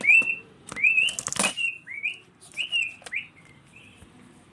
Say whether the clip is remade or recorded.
recorded